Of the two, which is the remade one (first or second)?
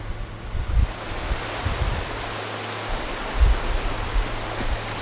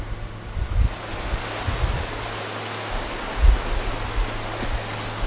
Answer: first